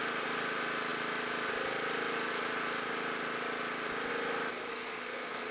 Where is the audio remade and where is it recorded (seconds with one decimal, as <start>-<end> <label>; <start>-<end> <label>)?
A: 0.0-4.7 recorded; 4.7-5.5 remade